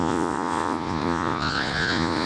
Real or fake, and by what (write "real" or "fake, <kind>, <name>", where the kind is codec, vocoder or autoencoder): fake, vocoder, Vocos